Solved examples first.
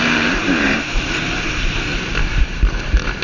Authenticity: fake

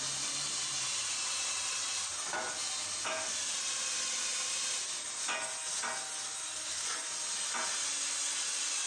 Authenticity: real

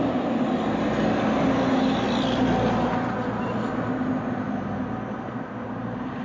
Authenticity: real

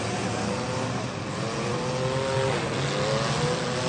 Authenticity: real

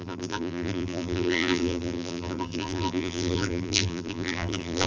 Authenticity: fake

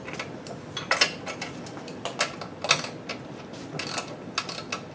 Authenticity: real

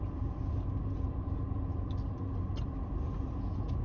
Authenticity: real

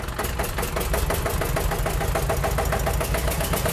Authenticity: real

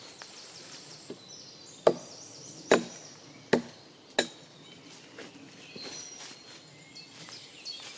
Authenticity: real